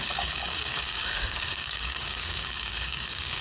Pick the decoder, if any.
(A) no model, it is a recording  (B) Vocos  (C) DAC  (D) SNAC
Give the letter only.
C